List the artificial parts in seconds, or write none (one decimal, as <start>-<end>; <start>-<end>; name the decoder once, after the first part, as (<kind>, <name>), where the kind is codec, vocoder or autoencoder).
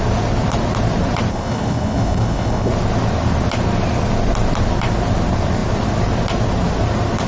1.3-2.7 (codec, HILCodec)